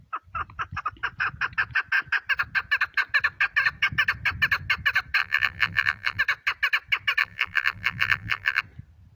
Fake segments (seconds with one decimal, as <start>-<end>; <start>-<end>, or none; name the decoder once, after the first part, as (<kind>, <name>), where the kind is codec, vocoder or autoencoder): 5.2-6.2 (vocoder, BigVGAN v2); 7.2-8.6